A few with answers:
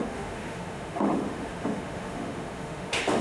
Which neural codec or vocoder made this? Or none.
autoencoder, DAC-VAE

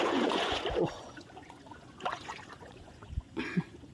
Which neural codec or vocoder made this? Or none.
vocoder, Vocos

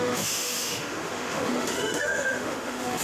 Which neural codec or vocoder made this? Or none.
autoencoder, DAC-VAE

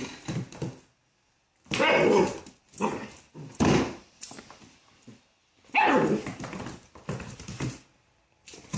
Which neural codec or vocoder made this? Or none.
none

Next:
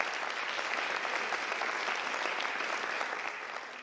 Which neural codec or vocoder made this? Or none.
none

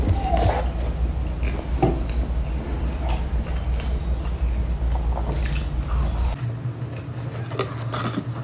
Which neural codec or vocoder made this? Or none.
none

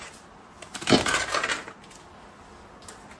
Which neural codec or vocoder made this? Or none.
none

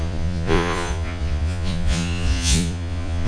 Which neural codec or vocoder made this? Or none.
vocoder, Vocos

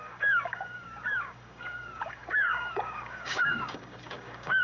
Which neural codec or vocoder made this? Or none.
codec, DAC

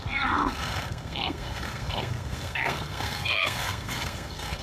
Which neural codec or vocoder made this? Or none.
codec, SNAC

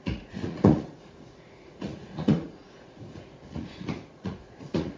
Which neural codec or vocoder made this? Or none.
vocoder, Vocos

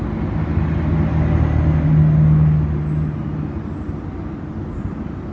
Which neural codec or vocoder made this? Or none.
none